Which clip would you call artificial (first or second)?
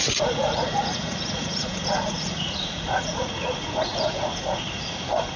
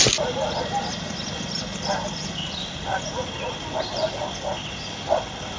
first